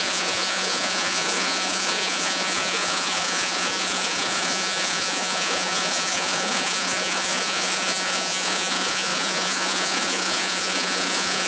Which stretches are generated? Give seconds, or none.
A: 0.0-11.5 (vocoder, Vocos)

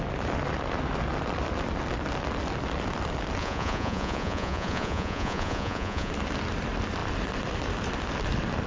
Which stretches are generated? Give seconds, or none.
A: 3.4-6.1 (vocoder, Vocos)